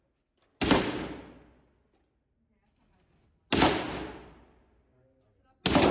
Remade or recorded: recorded